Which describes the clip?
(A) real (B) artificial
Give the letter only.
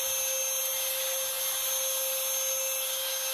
A